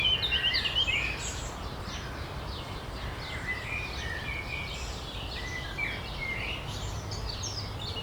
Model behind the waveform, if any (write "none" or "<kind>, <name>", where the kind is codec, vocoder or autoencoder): none